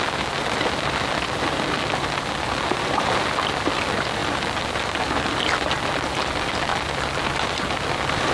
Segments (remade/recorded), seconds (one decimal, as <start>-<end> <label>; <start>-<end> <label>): 0.0-8.3 recorded

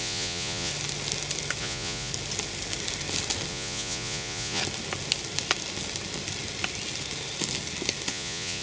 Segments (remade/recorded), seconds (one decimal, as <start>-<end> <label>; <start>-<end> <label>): 0.0-0.7 remade; 0.7-1.6 recorded; 1.6-2.1 remade; 2.1-3.5 recorded; 3.5-4.6 remade; 4.6-8.1 recorded; 8.1-8.6 remade

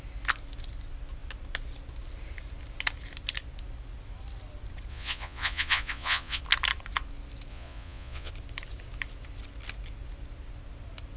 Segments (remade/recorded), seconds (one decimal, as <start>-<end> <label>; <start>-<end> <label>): 0.0-4.9 recorded; 4.9-6.4 remade; 6.4-7.5 recorded; 7.5-8.3 remade; 8.3-11.2 recorded

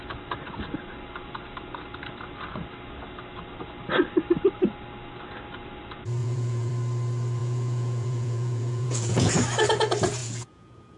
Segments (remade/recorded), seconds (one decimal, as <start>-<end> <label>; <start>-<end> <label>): 0.0-6.2 recorded; 6.2-6.7 remade; 6.7-7.4 recorded; 7.4-9.3 remade; 9.3-10.2 recorded; 10.2-11.0 remade

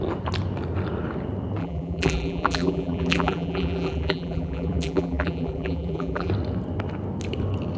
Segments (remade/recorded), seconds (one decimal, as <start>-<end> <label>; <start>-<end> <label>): 0.0-1.6 recorded; 1.6-6.3 remade; 6.3-7.8 recorded

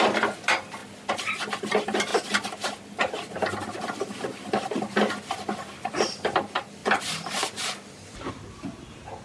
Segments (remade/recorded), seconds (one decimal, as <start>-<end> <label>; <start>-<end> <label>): 0.0-6.8 recorded; 6.8-8.3 remade; 8.3-9.2 recorded

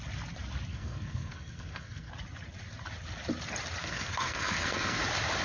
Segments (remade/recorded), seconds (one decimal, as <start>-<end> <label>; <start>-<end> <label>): 0.0-0.7 recorded; 0.7-2.1 remade; 2.1-3.8 recorded; 3.8-5.0 remade; 5.0-5.4 recorded

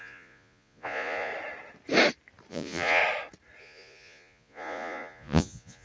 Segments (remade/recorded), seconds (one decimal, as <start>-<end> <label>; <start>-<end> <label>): 0.0-1.3 remade; 1.3-2.5 recorded; 2.5-3.0 remade; 3.0-3.6 recorded; 3.6-5.8 remade